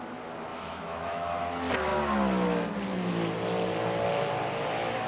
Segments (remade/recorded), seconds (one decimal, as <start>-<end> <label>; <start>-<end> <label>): 0.0-0.5 recorded; 0.5-1.4 remade; 1.4-5.1 recorded